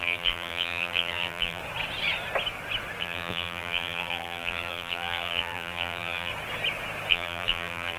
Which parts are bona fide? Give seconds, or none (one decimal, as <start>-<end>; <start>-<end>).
1.6-3.0; 6.3-7.1

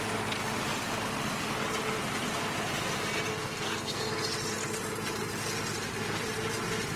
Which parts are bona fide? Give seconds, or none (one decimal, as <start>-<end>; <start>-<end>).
0.0-3.3; 4.1-7.0